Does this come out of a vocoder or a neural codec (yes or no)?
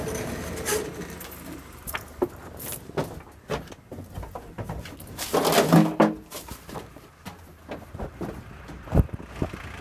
no